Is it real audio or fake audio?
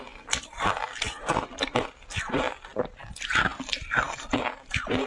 real